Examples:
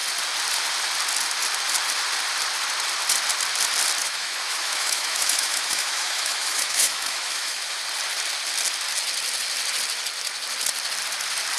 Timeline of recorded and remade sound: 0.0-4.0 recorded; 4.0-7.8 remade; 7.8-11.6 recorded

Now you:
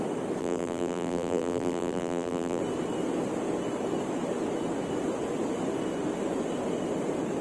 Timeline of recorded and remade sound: 0.0-0.4 recorded; 0.4-2.6 remade; 2.6-7.4 recorded

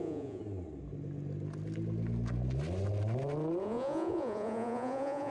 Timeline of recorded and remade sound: 0.0-0.4 remade; 0.4-3.6 recorded; 3.6-5.3 remade

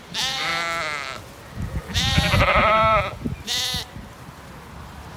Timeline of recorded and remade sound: 0.0-0.5 remade; 0.5-1.8 recorded; 1.8-5.2 remade